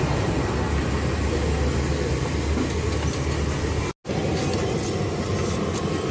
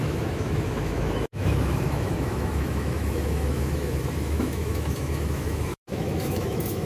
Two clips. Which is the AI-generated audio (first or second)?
second